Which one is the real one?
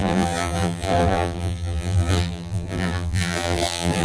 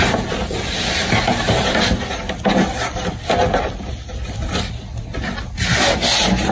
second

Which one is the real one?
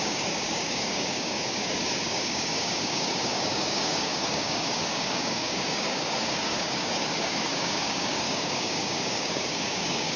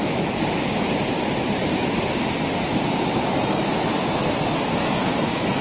second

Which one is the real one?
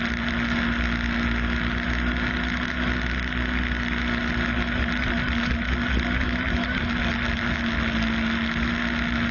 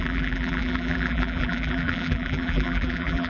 first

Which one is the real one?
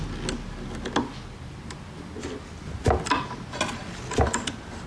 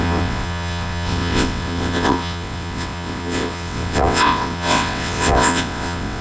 first